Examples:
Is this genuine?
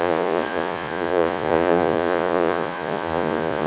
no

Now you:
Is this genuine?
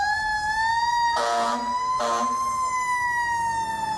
yes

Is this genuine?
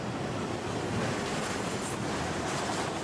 yes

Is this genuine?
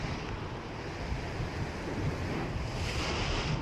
yes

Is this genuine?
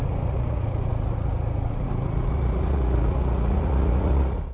no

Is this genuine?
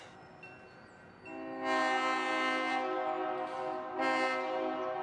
yes